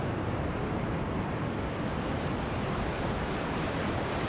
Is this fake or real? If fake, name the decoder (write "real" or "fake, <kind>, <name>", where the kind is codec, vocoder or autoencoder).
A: real